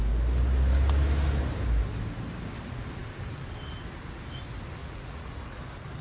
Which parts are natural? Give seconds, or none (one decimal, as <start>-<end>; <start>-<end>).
0.0-4.8; 5.6-6.0